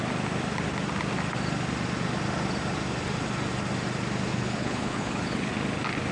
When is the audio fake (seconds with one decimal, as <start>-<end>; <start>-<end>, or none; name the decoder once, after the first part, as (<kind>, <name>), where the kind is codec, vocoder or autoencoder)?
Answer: 4.3-5.5 (codec, HILCodec)